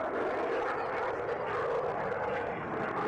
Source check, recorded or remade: recorded